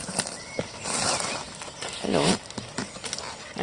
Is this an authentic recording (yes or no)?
yes